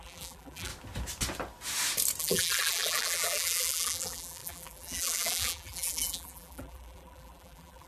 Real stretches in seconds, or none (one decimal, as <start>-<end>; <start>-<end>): 0.7-2.2

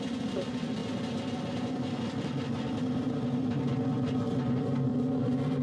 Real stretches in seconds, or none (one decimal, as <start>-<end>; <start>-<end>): 0.0-4.9

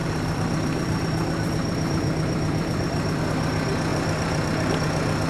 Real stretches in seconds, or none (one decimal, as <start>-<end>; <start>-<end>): 3.2-3.9; 4.7-5.3

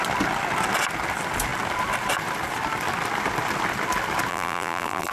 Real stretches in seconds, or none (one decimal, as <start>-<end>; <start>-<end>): 0.0-4.3

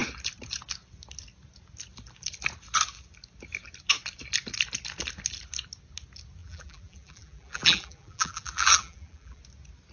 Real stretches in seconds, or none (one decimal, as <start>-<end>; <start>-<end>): 0.0-6.4; 9.4-9.9

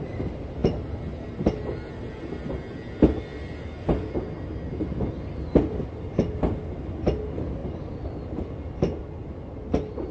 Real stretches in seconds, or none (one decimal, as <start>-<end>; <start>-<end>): 0.0-7.6; 8.4-10.1